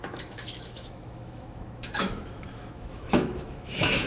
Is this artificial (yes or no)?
yes